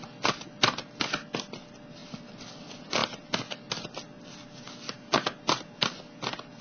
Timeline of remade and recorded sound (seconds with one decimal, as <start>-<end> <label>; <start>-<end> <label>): 0.0-6.6 recorded